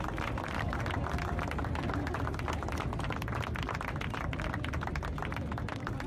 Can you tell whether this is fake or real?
real